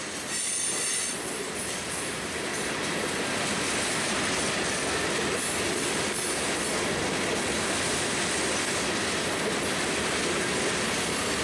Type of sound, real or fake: real